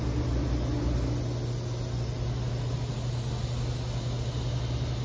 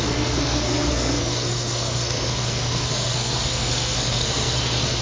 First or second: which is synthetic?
second